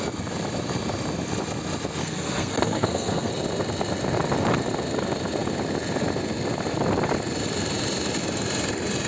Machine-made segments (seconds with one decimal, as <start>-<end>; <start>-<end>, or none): 2.0-3.3